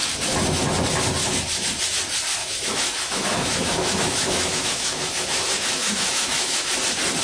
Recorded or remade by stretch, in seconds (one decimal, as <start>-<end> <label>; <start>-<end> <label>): 0.0-2.4 recorded; 2.4-6.7 remade; 6.7-7.2 recorded